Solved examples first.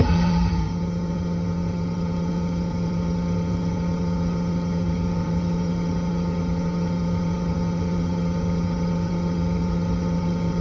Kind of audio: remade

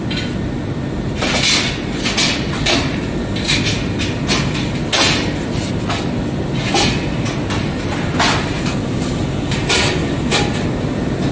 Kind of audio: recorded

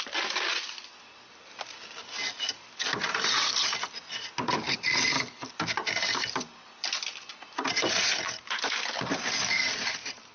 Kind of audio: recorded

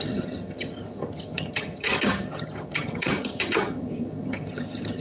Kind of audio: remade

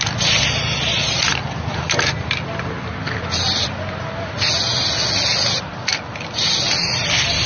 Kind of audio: recorded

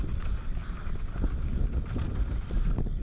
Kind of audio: recorded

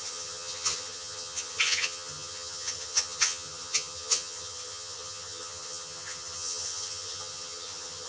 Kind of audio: remade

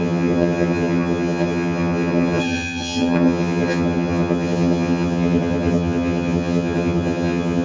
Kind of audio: remade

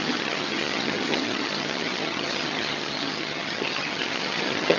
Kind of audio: remade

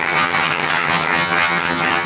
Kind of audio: remade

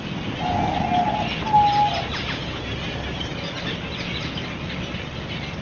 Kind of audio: recorded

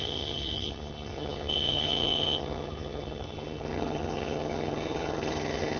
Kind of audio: remade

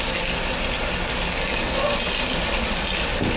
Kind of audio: recorded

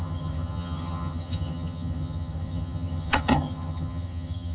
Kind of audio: remade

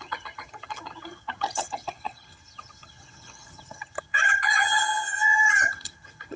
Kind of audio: remade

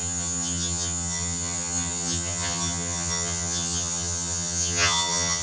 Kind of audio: remade